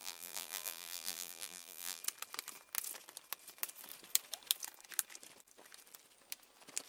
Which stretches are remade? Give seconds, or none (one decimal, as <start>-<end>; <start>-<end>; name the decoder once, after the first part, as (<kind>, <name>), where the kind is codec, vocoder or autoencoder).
0.0-2.0 (vocoder, BigVGAN v2)